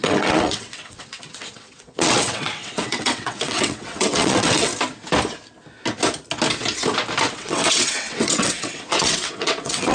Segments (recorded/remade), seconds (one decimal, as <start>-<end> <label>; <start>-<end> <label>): 0.0-4.7 remade; 4.7-7.3 recorded; 7.3-9.9 remade